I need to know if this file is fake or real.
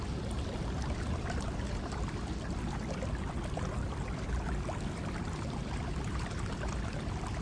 real